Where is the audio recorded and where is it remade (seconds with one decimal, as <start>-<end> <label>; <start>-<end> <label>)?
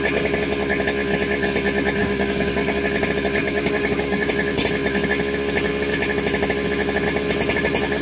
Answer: 0.0-2.0 recorded; 2.0-2.8 remade; 2.8-3.4 recorded; 3.4-4.3 remade; 4.3-8.0 recorded